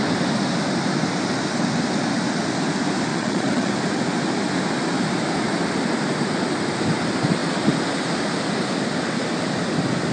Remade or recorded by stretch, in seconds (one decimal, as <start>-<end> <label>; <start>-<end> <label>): 0.0-3.1 recorded; 3.1-3.7 remade; 3.7-10.1 recorded